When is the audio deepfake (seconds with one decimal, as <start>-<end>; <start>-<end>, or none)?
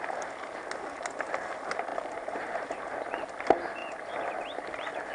1.9-3.0